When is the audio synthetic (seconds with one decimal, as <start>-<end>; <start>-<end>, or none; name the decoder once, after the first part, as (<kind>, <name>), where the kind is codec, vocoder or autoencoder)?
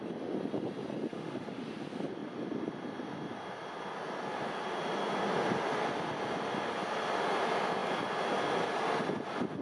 1.1-1.6 (autoencoder, DAC-VAE)